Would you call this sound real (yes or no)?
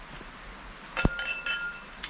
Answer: yes